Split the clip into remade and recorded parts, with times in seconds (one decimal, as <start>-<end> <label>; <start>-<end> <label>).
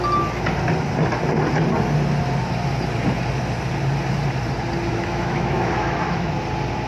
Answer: 0.0-4.9 recorded; 4.9-6.3 remade; 6.3-6.9 recorded